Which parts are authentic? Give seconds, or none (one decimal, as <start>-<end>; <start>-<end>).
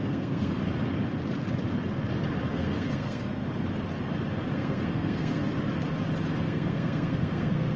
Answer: 0.6-2.5; 3.4-4.5; 5.4-6.4